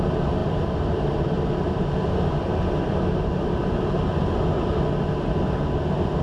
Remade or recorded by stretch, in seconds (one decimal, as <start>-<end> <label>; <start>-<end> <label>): 0.0-0.4 recorded; 0.4-4.1 remade; 4.1-6.2 recorded

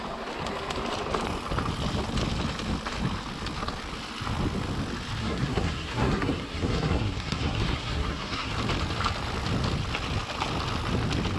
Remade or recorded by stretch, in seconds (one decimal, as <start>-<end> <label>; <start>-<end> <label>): 0.0-5.2 recorded; 5.2-8.5 remade; 8.5-11.4 recorded

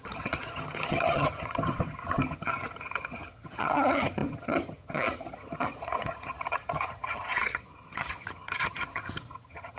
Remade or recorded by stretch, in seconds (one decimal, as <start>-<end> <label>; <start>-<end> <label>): 0.0-9.8 remade

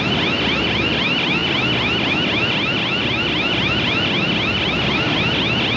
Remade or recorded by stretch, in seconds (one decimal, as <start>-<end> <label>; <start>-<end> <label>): 0.0-5.8 recorded

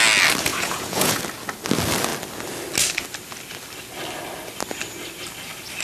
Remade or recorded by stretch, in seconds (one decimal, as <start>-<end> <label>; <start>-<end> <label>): 0.0-0.5 recorded; 0.5-1.2 remade; 1.2-5.8 recorded